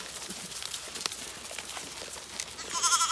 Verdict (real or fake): real